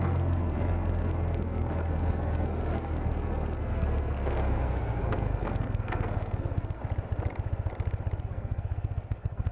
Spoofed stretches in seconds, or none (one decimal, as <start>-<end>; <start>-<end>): 0.0-6.8; 8.2-9.5